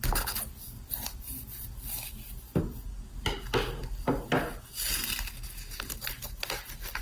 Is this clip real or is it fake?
real